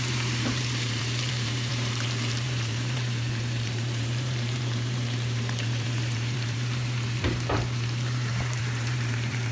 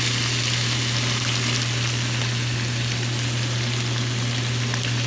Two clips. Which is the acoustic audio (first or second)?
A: second